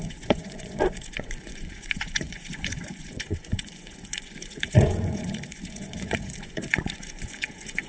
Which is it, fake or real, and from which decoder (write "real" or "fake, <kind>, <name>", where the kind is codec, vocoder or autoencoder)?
fake, vocoder, Vocos